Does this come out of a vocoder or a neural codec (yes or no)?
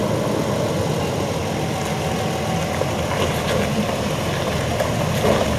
no